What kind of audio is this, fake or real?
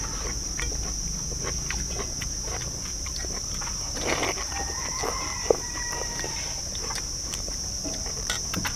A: fake